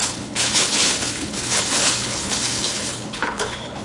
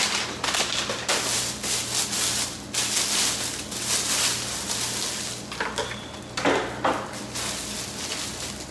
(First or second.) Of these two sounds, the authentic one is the second